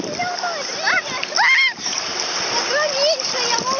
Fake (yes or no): no